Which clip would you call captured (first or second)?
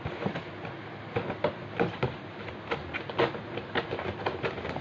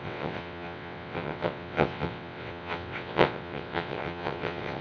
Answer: first